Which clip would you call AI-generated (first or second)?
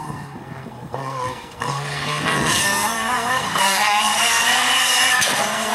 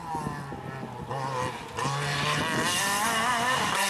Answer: first